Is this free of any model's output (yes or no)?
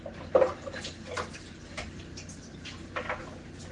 yes